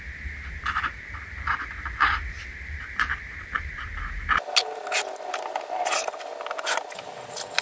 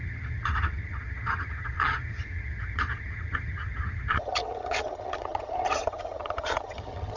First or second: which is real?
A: first